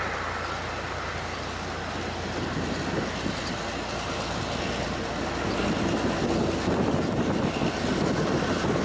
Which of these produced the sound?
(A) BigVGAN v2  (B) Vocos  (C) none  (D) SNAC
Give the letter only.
C